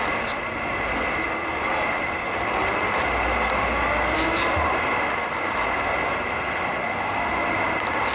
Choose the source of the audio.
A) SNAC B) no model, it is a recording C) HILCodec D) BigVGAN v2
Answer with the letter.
B